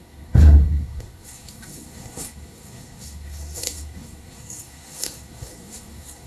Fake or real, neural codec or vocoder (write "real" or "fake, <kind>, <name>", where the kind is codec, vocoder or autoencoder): fake, codec, SNAC